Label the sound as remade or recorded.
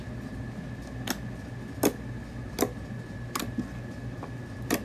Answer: recorded